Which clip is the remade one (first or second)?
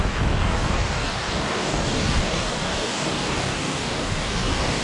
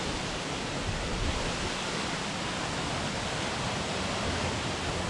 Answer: first